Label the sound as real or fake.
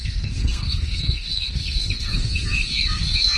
fake